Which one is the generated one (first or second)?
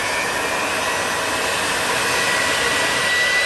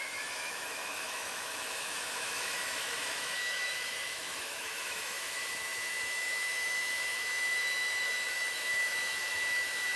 second